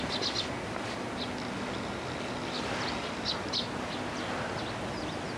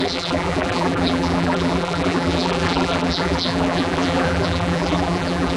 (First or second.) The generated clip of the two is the second